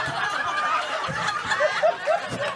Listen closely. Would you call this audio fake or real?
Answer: real